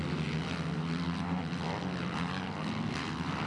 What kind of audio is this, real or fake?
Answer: real